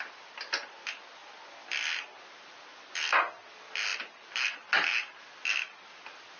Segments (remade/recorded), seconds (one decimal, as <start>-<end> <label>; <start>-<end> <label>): 0.0-6.4 recorded